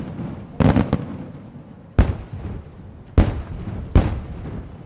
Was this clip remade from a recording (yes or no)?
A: no